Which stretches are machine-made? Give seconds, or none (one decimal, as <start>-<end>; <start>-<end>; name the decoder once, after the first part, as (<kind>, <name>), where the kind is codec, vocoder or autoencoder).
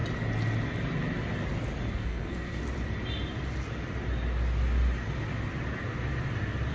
1.9-2.6 (codec, SNAC)